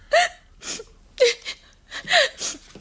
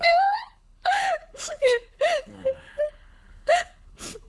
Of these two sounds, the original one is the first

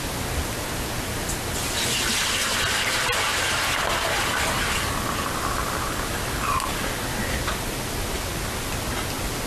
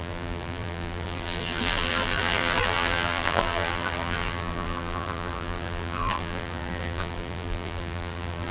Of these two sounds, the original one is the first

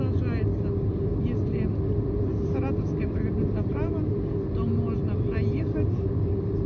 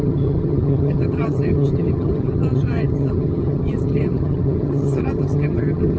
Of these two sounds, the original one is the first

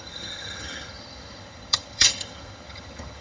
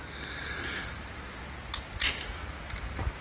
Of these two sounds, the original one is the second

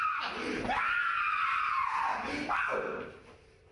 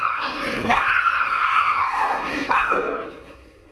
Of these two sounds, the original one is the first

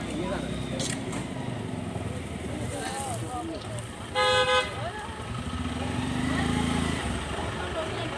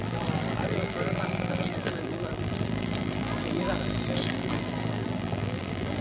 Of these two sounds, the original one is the first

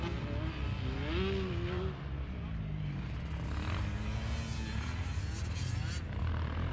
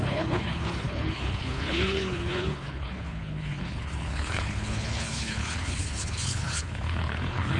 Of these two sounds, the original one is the first